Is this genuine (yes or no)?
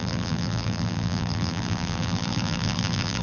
no